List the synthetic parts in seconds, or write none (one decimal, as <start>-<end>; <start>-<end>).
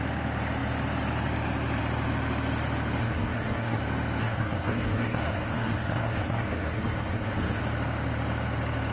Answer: 3.0-3.8; 4.2-7.6